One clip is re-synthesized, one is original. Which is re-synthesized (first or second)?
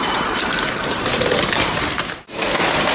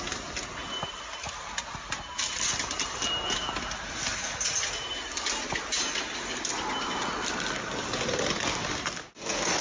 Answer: first